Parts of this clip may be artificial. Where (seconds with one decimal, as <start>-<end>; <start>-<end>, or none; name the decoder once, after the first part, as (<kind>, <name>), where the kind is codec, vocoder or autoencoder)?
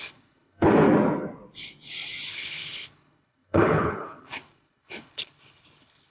0.0-0.7 (codec, HILCodec); 2.3-6.1